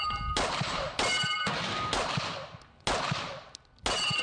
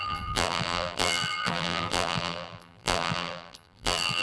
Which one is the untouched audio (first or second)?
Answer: first